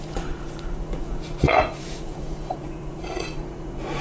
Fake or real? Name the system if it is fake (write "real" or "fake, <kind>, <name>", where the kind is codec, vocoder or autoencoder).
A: fake, vocoder, Vocos